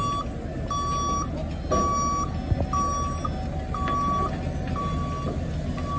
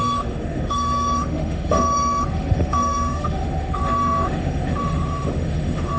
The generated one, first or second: second